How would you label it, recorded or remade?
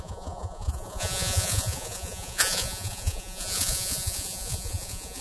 remade